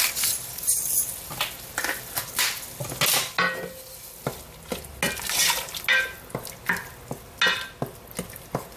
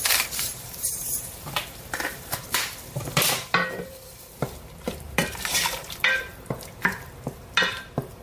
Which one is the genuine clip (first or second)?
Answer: first